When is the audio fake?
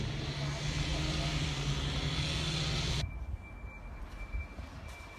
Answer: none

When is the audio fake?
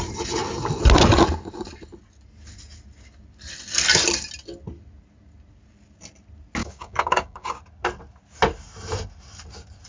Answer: 6.6-7.6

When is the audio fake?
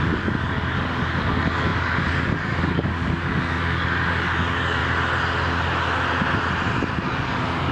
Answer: 0.0-4.8; 6.9-7.7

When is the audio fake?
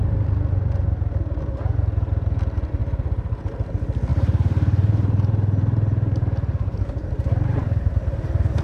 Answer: 2.8-3.4; 4.1-8.6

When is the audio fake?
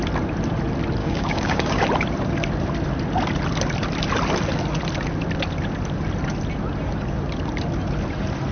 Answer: 1.0-1.8